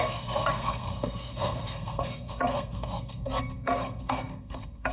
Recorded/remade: remade